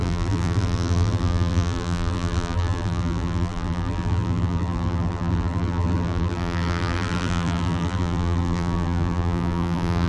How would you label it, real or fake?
fake